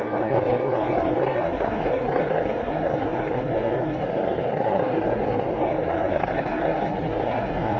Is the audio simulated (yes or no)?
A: yes